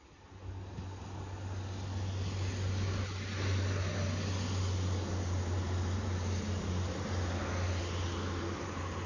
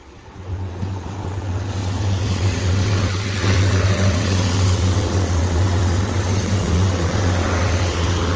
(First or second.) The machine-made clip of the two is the second